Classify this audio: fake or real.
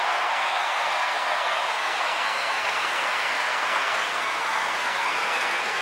fake